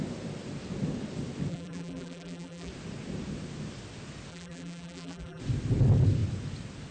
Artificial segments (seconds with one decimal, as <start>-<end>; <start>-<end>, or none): 1.5-2.7; 4.3-5.4